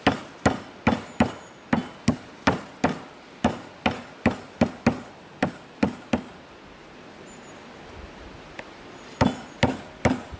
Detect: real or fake real